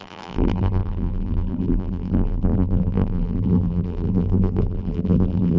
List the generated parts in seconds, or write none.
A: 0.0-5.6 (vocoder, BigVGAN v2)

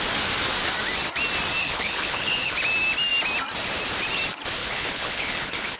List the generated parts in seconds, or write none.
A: 1.6-2.5 (codec, HILCodec); 4.6-5.8

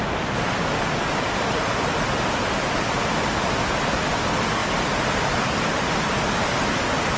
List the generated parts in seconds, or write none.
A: none

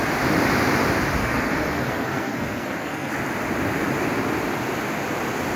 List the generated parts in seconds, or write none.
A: 1.2-3.1 (codec, SNAC)